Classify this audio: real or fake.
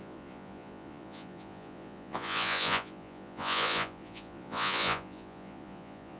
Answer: fake